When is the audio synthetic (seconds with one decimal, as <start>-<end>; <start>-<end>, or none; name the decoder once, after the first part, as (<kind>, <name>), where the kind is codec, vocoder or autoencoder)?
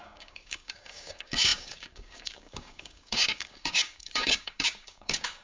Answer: 0.0-5.4 (codec, DAC)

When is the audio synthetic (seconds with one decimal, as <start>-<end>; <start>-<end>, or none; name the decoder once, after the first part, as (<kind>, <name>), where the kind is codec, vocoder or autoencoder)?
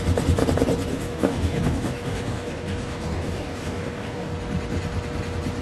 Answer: 0.9-4.3 (codec, DAC)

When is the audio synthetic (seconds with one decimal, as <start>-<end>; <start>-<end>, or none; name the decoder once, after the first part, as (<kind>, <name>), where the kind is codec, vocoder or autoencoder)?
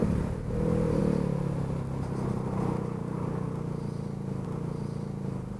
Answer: 3.0-3.5 (codec, DAC)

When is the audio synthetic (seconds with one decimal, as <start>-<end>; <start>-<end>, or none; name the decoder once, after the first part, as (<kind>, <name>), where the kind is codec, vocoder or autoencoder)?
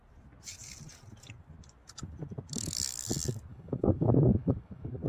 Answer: 3.5-5.1 (codec, DAC)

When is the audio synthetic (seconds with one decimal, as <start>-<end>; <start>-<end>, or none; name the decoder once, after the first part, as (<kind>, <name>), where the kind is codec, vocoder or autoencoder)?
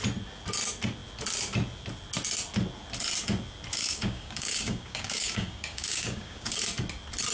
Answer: 3.7-6.6 (codec, DAC)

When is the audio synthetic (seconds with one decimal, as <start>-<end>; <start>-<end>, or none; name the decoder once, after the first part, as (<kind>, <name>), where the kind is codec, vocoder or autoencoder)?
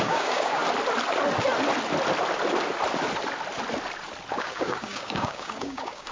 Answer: 0.0-0.6 (codec, DAC); 4.3-6.1